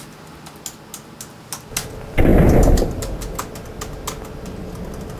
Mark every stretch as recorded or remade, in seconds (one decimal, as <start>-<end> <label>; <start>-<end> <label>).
0.0-2.3 recorded; 2.3-2.9 remade; 2.9-5.2 recorded